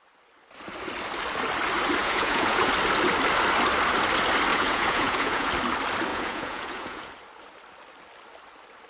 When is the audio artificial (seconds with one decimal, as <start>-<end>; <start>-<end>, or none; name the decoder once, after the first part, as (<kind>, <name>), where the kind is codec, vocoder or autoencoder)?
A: 2.0-2.7 (vocoder, Vocos); 4.5-5.5; 6.1-7.1